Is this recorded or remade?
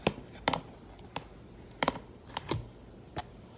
recorded